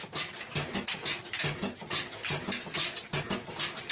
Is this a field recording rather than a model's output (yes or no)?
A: yes